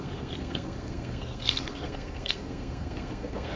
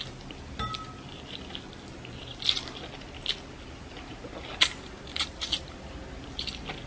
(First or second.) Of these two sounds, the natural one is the second